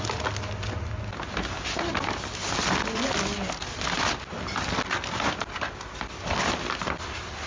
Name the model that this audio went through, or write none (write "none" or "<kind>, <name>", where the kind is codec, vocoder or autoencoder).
none